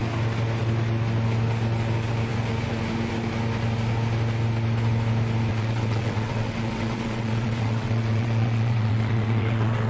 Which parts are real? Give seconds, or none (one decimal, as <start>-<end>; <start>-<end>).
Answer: 0.0-5.5